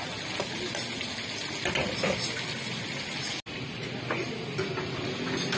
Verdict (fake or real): real